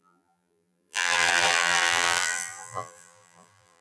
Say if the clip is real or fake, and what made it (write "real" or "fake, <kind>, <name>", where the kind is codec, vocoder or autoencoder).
fake, vocoder, BigVGAN v2